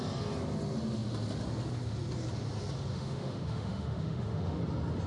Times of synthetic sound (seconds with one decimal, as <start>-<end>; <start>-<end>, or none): 2.9-4.6